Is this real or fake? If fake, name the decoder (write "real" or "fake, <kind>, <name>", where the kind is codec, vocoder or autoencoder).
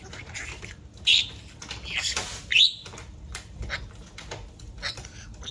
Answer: fake, vocoder, BigVGAN v2